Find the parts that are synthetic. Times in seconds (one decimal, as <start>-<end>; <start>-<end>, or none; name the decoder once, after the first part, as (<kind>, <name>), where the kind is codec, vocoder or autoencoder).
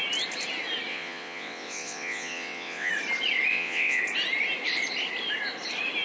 0.9-2.9 (vocoder, WaveNeXt); 3.5-4.0